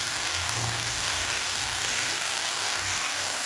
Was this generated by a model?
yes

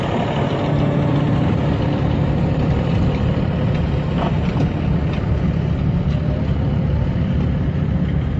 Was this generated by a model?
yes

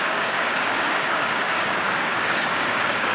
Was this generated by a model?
yes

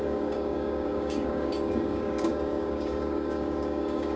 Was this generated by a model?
yes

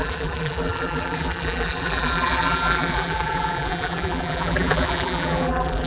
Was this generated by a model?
yes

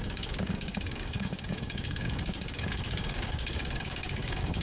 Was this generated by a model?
yes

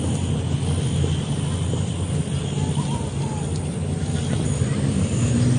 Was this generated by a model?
no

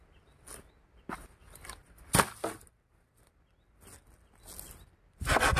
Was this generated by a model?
no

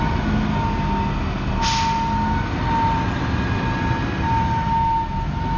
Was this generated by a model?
no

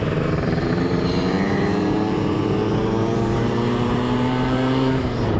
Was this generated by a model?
yes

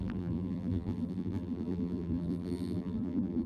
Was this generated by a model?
yes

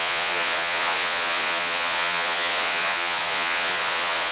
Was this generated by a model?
yes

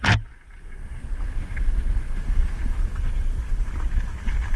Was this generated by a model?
no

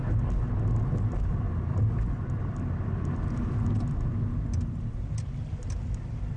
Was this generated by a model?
no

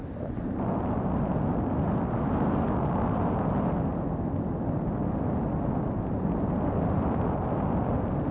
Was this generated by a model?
no